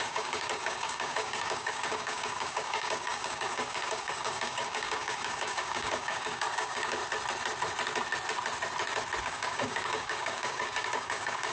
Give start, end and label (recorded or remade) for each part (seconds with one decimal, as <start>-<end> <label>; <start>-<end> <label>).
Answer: 0.0-7.0 remade; 7.0-9.2 recorded; 9.2-11.5 remade